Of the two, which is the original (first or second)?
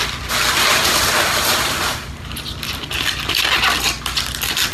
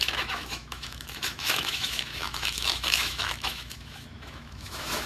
first